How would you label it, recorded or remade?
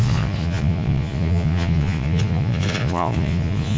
remade